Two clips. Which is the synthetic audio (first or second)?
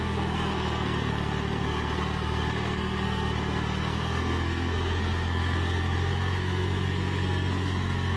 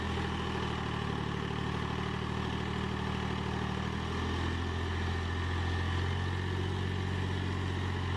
first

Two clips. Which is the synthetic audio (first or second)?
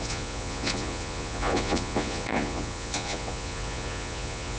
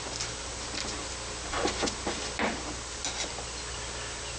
first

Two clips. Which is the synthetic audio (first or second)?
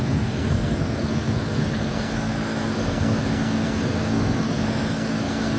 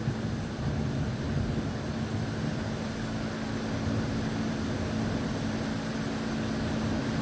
first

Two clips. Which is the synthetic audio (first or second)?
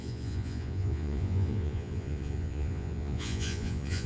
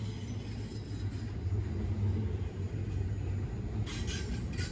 first